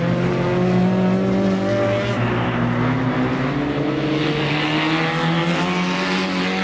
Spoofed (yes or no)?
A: no